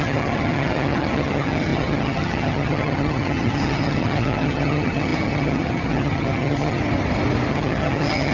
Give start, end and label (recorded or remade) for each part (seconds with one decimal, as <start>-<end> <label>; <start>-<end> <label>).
0.0-6.8 remade; 6.8-7.5 recorded; 7.5-8.3 remade